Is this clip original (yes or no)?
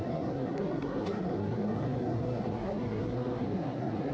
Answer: no